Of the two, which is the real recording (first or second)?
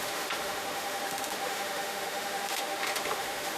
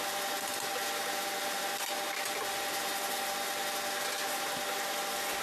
second